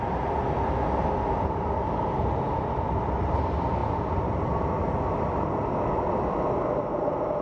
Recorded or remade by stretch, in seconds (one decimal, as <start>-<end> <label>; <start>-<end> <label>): 0.0-7.4 recorded